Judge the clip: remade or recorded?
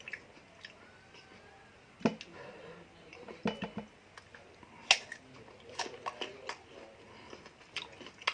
recorded